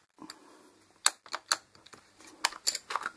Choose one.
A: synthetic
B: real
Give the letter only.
B